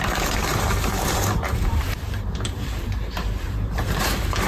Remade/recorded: remade